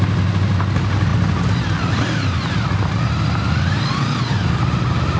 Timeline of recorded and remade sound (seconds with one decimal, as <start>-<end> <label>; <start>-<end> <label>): 0.0-5.2 recorded